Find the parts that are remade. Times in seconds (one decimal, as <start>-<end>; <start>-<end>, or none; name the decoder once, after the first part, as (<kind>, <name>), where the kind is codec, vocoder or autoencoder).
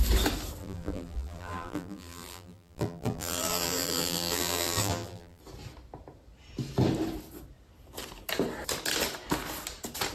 0.6-5.4 (vocoder, BigVGAN v2)